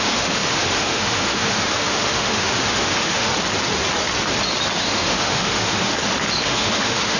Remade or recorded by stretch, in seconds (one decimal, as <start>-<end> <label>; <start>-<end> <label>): 0.0-3.3 remade; 3.3-4.8 recorded; 4.8-5.9 remade; 5.9-6.4 recorded; 6.4-7.2 remade